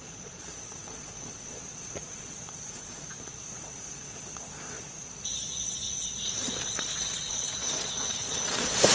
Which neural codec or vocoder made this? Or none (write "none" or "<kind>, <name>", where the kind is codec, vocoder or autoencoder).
vocoder, Vocos